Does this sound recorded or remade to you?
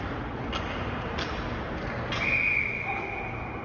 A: recorded